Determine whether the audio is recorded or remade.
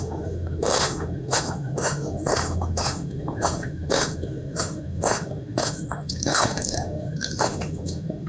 remade